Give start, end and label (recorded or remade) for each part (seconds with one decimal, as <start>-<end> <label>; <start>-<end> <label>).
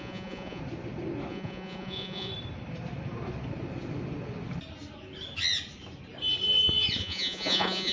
0.0-0.6 remade; 0.6-1.3 recorded; 1.3-2.3 remade; 2.3-7.0 recorded; 7.0-7.9 remade